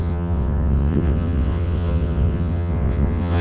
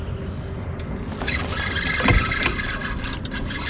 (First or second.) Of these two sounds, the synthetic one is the first